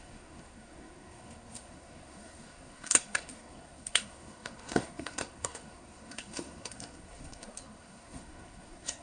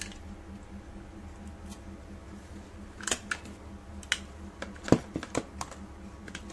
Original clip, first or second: second